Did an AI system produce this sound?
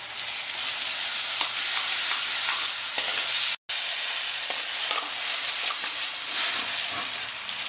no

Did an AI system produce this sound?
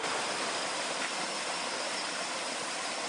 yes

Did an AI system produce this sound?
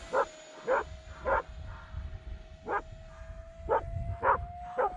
no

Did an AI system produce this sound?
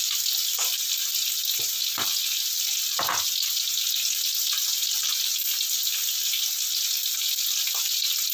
no